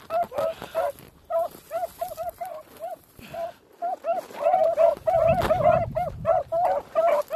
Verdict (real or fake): real